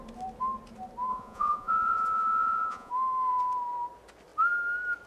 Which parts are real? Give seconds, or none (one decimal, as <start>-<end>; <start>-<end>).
0.0-1.1; 2.9-5.1